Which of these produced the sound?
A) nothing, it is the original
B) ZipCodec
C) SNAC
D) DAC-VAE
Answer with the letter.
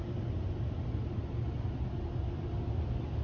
A